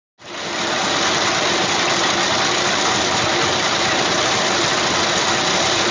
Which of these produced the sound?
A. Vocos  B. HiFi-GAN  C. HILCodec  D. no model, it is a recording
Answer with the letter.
D